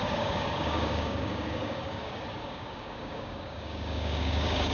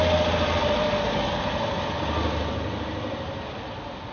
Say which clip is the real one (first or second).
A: second